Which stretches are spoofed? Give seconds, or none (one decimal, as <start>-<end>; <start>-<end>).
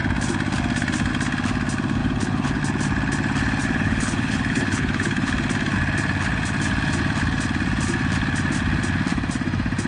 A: 2.0-2.6; 3.6-5.3